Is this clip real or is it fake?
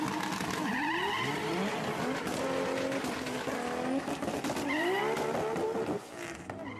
real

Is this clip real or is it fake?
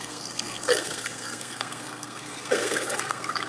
fake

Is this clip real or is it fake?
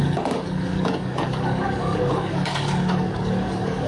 fake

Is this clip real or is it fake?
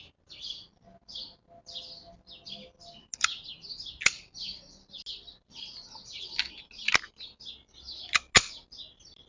real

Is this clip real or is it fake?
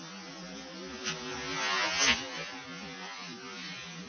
real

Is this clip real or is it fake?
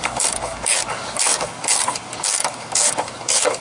fake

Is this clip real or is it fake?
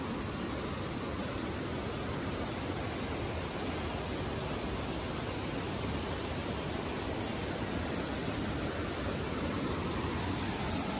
real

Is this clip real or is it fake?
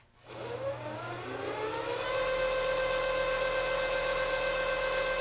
real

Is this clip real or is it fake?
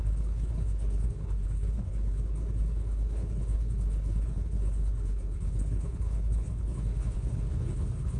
fake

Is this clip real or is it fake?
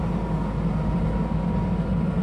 real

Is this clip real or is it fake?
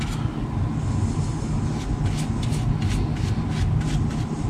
real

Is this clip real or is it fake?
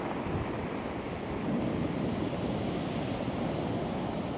real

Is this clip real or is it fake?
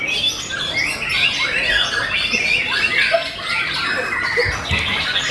real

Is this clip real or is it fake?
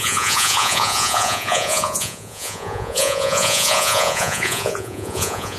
fake